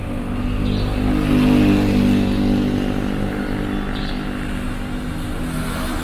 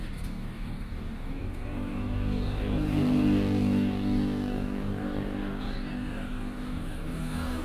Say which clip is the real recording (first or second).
first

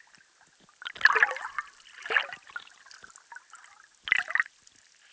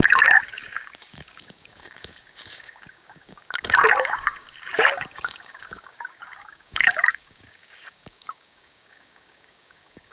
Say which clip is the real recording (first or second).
first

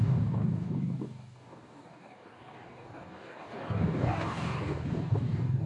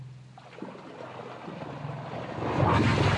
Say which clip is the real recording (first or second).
second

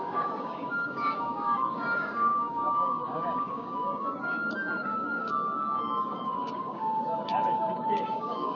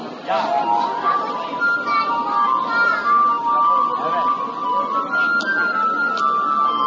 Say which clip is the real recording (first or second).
second